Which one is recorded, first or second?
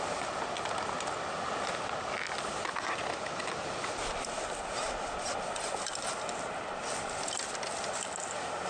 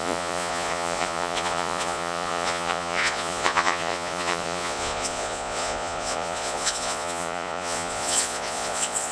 first